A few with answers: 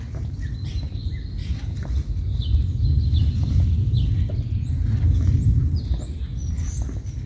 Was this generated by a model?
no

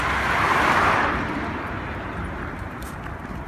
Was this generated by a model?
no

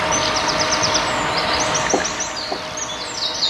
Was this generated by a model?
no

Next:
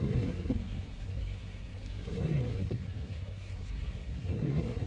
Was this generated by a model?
yes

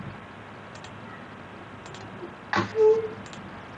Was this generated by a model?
no